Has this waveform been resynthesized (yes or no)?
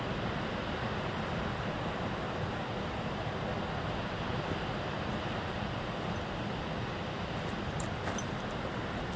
no